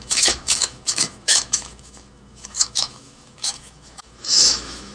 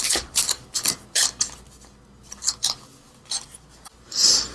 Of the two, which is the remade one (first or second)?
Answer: first